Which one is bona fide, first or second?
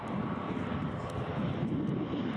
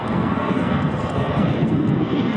first